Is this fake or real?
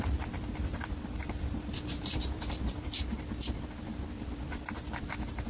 fake